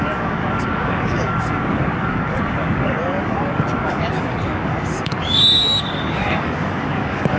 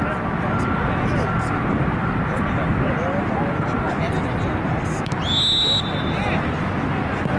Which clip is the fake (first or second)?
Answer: first